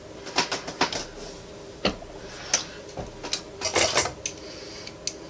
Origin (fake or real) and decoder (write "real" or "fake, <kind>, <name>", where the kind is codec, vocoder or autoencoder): real